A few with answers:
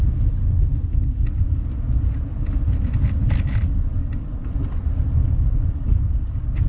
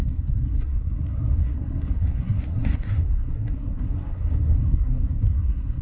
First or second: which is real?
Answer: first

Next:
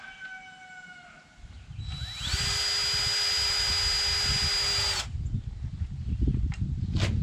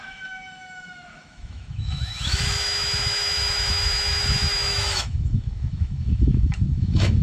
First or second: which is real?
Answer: first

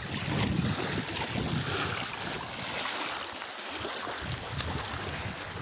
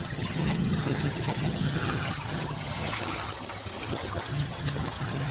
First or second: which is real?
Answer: first